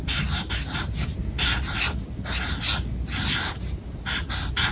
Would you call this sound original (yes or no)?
yes